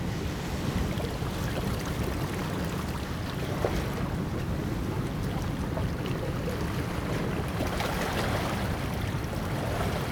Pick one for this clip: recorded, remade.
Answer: recorded